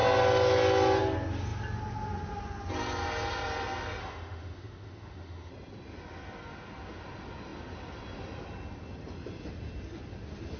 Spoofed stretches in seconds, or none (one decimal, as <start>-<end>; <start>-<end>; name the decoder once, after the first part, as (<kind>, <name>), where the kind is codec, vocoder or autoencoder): 4.0-5.5 (autoencoder, DAC-VAE)

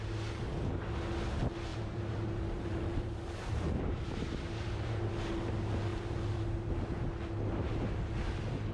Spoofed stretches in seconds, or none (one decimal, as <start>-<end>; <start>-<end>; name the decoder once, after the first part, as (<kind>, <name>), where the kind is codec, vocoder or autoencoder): 1.7-5.1 (vocoder, BigVGAN v2); 5.9-6.7

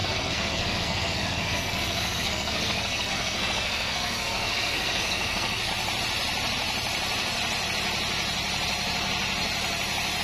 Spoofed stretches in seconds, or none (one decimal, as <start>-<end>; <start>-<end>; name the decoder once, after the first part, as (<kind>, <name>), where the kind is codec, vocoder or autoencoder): 0.0-5.7 (codec, SNAC)

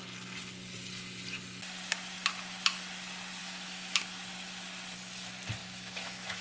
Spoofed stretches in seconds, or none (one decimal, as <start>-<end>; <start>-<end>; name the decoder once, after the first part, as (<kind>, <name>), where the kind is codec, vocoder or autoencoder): 3.4-4.0 (autoencoder, DAC-VAE); 5.6-6.4